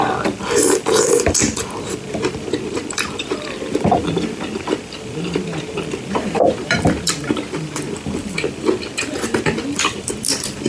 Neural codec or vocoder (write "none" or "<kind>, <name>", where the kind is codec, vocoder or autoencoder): vocoder, BigVGAN v2